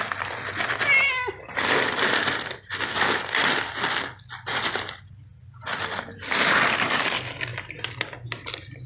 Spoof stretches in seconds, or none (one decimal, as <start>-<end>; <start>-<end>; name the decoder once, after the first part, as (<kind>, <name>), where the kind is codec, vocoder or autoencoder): none